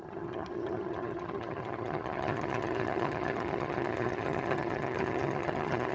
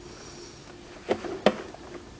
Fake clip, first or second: first